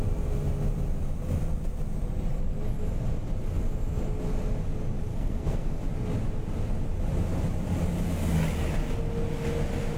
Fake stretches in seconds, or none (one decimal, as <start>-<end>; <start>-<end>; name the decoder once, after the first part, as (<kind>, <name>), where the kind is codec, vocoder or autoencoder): 5.1-5.8 (codec, SNAC)